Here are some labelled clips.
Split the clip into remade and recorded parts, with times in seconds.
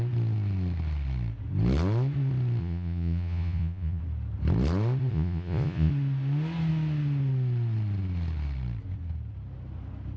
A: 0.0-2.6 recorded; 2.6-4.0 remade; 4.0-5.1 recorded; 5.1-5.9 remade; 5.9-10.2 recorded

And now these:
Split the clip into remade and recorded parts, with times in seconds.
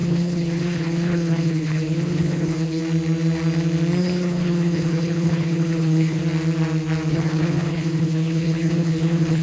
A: 0.0-2.8 remade; 2.8-4.0 recorded; 4.0-6.2 remade; 6.2-7.1 recorded; 7.1-9.4 remade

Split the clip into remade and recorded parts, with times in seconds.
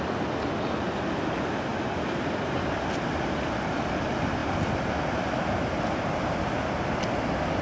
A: 0.0-7.6 recorded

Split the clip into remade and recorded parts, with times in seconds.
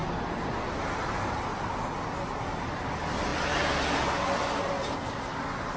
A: 0.0-5.8 recorded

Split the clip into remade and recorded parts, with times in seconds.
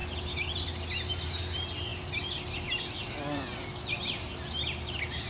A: 0.0-5.3 recorded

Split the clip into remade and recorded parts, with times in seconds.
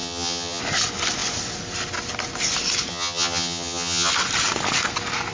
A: 0.0-0.6 remade; 0.6-2.9 recorded; 2.9-4.1 remade; 4.1-5.3 recorded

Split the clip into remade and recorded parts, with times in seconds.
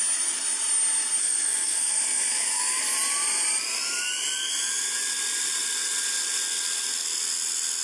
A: 0.0-1.2 recorded; 1.2-2.8 remade; 2.8-7.8 recorded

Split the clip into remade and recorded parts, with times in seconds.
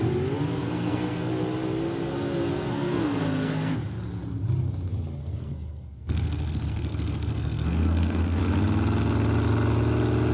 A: 0.0-0.6 recorded; 0.6-1.3 remade; 1.3-2.7 recorded; 2.7-3.7 remade; 3.7-5.2 recorded; 5.2-8.4 remade; 8.4-10.3 recorded